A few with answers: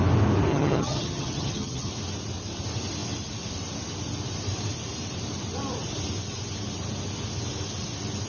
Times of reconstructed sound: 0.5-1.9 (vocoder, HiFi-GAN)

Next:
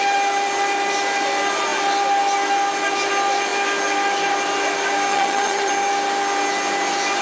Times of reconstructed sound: 5.1-5.7 (vocoder, HiFi-GAN)

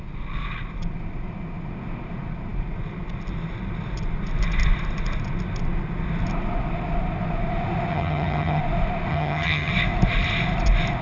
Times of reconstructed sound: 7.9-8.6 (vocoder, HiFi-GAN); 9.1-9.7

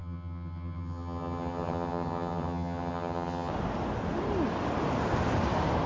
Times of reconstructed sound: 0.0-3.5 (vocoder, HiFi-GAN)

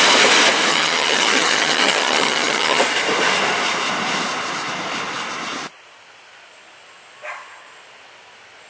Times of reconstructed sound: 0.7-2.8 (vocoder, HiFi-GAN)

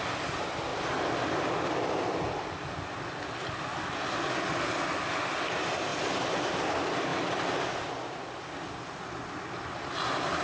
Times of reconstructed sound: none

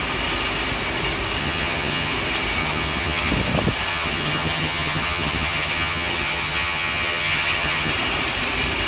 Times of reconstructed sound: 1.4-2.1 (vocoder, HiFi-GAN); 2.6-3.3; 3.9-7.9